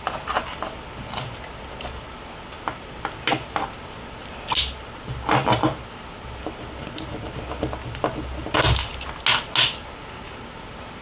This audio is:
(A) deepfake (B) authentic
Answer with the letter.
B